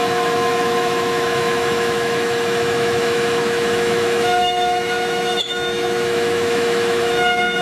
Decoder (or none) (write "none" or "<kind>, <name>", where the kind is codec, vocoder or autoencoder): autoencoder, DAC-VAE